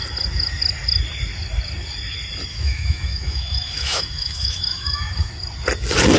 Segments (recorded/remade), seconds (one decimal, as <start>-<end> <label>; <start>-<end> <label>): 0.0-2.5 recorded; 2.5-5.3 remade; 5.3-6.2 recorded